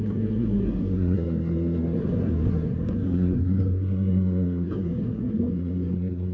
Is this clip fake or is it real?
fake